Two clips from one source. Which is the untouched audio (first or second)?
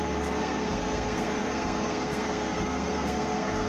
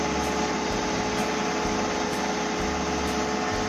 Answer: second